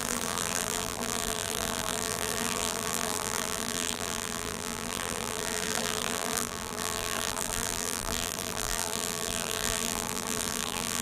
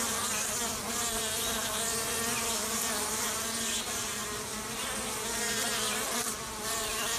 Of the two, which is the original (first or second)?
second